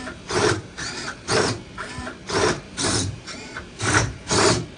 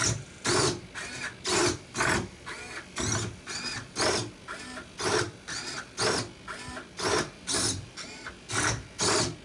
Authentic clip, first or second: second